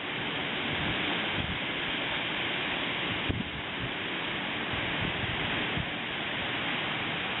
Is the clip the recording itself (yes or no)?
yes